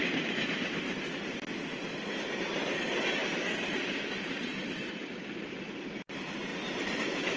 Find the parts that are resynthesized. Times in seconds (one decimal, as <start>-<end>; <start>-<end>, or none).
2.5-5.0; 5.8-6.5